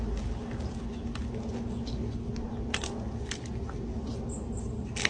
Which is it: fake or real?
real